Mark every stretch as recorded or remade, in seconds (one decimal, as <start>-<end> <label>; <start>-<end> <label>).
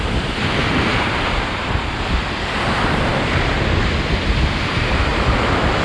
0.0-3.1 remade; 3.1-4.2 recorded; 4.2-5.1 remade; 5.1-5.8 recorded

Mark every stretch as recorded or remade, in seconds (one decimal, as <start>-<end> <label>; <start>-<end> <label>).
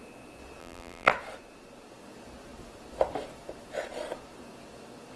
0.0-0.6 recorded; 0.6-1.1 remade; 1.1-5.2 recorded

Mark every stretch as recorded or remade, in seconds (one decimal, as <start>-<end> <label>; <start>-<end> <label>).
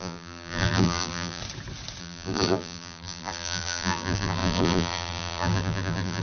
0.0-1.4 remade; 1.4-2.0 recorded; 2.0-6.2 remade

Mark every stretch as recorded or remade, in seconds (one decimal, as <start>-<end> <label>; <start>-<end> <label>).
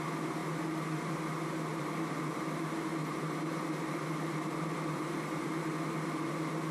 0.0-0.4 recorded; 0.4-1.1 remade; 1.1-1.7 recorded; 1.7-5.7 remade; 5.7-6.7 recorded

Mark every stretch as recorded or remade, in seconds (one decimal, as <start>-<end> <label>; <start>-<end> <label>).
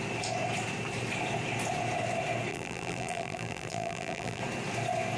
0.0-2.5 recorded; 2.5-4.4 remade; 4.4-5.2 recorded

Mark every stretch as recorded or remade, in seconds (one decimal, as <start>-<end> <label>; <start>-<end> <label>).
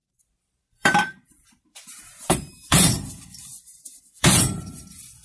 0.0-3.1 remade; 3.1-3.5 recorded; 3.5-4.8 remade; 4.8-5.2 recorded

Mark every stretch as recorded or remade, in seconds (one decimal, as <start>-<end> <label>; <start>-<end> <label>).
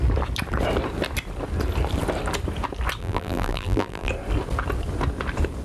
0.0-3.0 recorded; 3.0-4.1 remade; 4.1-5.6 recorded